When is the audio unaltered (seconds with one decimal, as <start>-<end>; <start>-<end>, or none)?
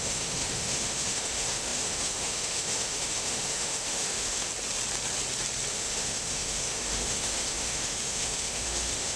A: 4.5-5.7